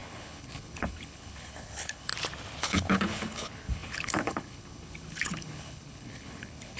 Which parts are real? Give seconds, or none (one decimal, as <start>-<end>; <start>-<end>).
2.1-2.6

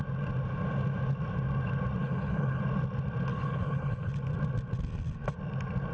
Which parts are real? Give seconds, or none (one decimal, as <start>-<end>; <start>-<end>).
0.0-2.0; 2.6-3.3; 4.1-5.9

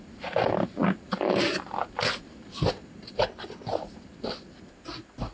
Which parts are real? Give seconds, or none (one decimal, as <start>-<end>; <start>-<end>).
0.0-3.2; 3.7-5.3

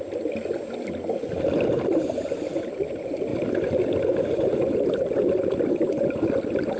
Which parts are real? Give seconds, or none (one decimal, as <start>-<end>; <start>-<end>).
0.0-6.8

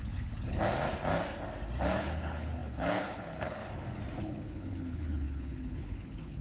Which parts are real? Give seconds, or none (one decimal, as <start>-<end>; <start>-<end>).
0.6-1.8; 3.6-4.2